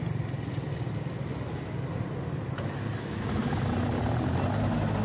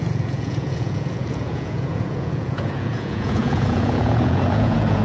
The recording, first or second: first